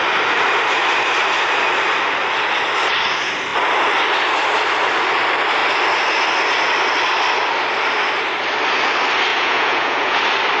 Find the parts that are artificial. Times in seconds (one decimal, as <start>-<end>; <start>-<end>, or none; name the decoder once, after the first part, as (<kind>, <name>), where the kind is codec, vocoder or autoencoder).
9.3-10.2 (vocoder, Vocos)